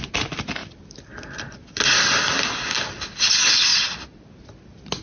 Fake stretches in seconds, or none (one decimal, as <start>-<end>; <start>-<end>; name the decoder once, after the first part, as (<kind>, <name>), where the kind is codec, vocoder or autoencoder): none